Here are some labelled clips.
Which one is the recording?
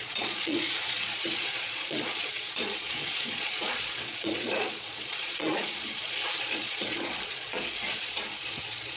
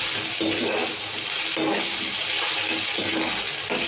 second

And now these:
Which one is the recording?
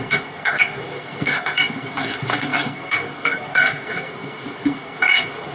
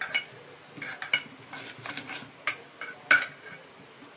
second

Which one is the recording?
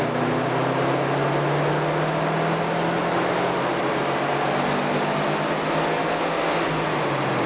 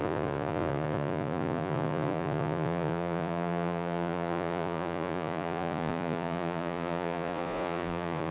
first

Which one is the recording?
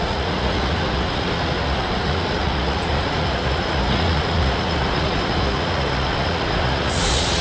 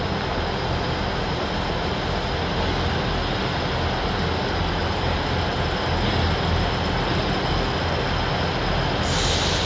second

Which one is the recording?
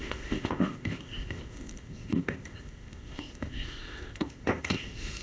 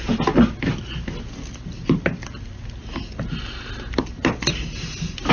second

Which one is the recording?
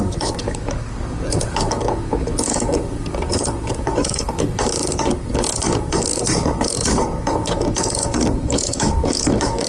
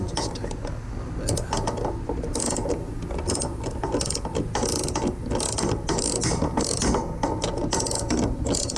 second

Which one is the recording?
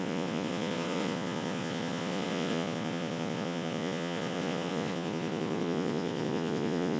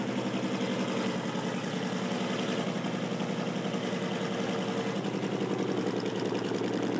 second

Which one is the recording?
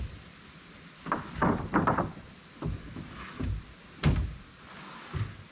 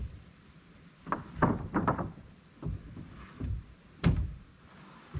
first